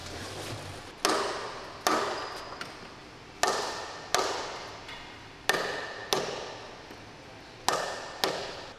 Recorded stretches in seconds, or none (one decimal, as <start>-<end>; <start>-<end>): 0.0-8.8